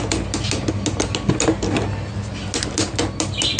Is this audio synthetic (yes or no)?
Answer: no